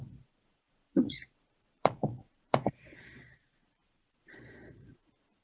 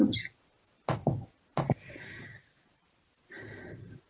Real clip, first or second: second